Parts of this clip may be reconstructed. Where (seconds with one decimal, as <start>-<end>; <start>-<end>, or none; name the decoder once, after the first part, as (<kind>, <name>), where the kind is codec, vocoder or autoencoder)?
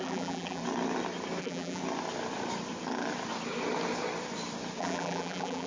0.0-0.6 (vocoder, BigVGAN v2); 1.4-1.8; 4.8-5.7